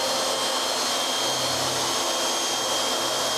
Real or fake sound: real